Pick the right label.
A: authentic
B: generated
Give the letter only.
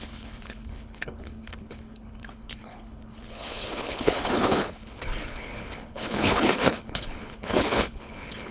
B